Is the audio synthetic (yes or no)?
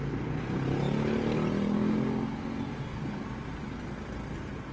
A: no